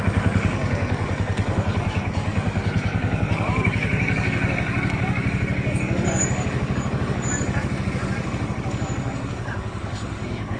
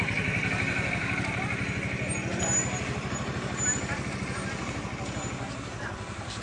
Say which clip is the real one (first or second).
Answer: second